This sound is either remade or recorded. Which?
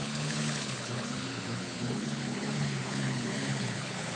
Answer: remade